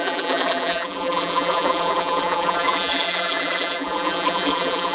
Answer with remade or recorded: remade